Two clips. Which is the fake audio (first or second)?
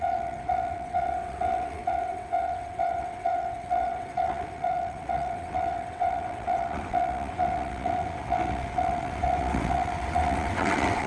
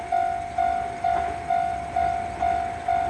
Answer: first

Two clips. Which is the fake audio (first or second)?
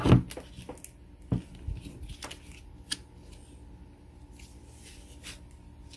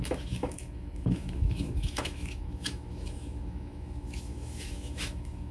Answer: second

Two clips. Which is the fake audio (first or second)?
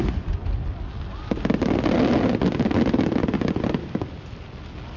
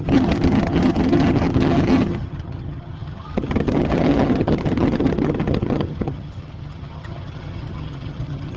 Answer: second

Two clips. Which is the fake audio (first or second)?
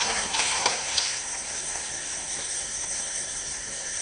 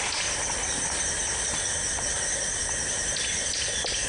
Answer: first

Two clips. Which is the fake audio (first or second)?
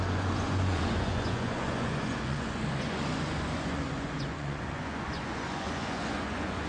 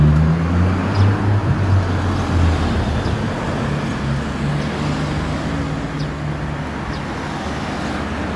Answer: first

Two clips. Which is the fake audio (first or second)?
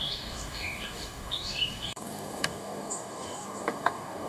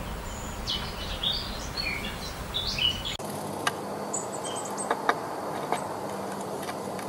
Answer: first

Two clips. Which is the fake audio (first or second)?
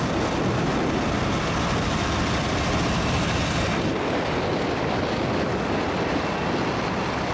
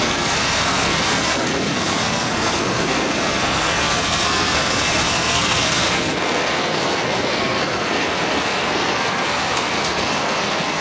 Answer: second